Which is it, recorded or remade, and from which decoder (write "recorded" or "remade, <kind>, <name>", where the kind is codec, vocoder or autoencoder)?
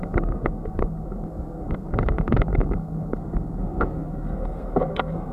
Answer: remade, codec, SNAC